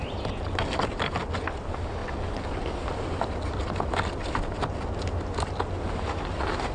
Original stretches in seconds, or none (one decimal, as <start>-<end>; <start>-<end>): 0.0-6.7